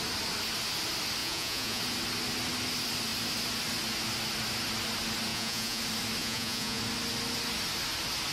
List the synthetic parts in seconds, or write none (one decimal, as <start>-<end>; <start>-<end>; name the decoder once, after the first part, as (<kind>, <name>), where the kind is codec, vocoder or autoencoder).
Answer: 1.2-1.8 (vocoder, Vocos); 5.3-5.8; 6.2-6.8